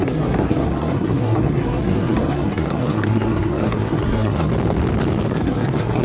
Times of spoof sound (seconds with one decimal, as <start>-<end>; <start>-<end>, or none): 0.0-4.5; 5.3-6.0

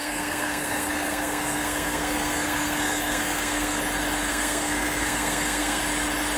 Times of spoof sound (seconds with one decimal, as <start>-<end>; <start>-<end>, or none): 0.0-3.8; 4.3-5.8

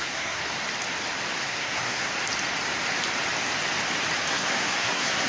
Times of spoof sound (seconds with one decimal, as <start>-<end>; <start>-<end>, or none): 0.0-0.4; 1.4-2.1; 4.3-5.3

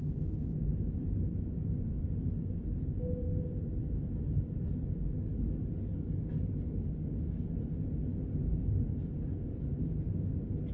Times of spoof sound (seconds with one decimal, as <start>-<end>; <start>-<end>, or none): 5.3-7.1

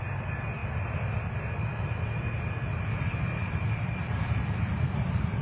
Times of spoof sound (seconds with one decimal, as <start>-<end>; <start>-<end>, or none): 3.4-5.4